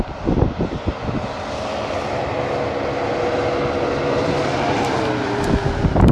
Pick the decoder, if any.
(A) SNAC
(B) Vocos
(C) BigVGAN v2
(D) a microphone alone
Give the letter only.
C